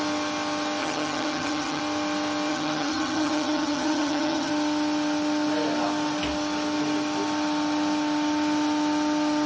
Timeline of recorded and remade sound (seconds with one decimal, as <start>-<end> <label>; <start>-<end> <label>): 0.0-0.8 recorded; 0.8-1.8 remade; 1.8-2.5 recorded; 2.5-4.5 remade; 4.5-9.5 recorded

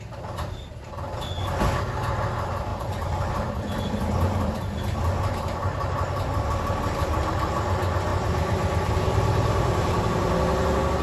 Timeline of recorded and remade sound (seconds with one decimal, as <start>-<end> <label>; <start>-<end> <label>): 0.0-2.7 recorded; 2.7-3.2 remade; 3.2-11.0 recorded

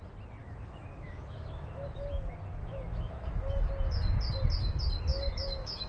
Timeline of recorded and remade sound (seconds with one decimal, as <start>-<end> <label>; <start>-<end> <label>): 0.0-0.4 recorded; 0.4-2.1 remade; 2.1-2.6 recorded; 2.6-3.7 remade; 3.7-5.1 recorded; 5.1-5.9 remade

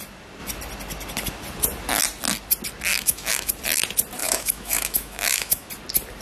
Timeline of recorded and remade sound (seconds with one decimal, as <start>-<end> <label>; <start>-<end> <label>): 0.0-2.9 recorded; 2.9-3.5 remade; 3.5-4.2 recorded; 4.2-5.7 remade; 5.7-6.2 recorded

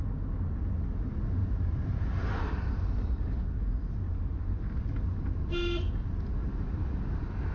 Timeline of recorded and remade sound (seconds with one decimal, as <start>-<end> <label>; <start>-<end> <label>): 0.0-1.4 recorded; 1.4-5.9 remade; 5.9-6.4 recorded; 6.4-7.0 remade; 7.0-7.5 recorded

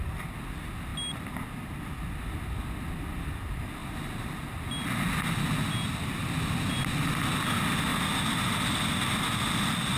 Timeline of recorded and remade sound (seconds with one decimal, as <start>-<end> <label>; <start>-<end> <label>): 0.0-10.0 recorded

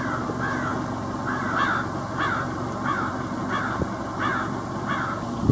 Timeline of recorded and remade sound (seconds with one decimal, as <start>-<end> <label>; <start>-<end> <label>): 0.0-5.5 recorded